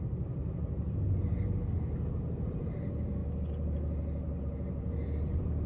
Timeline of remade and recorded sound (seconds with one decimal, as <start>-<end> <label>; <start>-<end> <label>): 0.0-0.4 remade; 0.4-2.5 recorded; 2.5-3.2 remade; 3.2-4.4 recorded; 4.4-5.7 remade

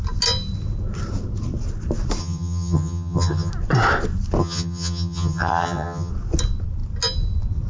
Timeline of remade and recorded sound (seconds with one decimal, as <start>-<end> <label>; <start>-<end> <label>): 0.0-2.2 recorded; 2.2-3.5 remade; 3.5-4.4 recorded; 4.4-6.1 remade; 6.1-7.7 recorded

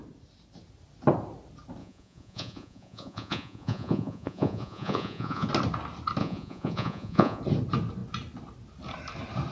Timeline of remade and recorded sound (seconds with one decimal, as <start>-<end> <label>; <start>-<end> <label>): 0.0-1.8 recorded; 1.8-5.5 remade; 5.5-6.2 recorded; 6.2-7.4 remade; 7.4-9.5 recorded